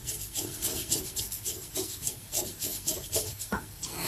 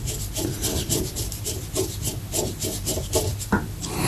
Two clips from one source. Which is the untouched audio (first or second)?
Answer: second